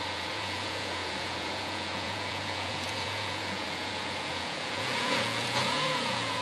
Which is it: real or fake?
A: fake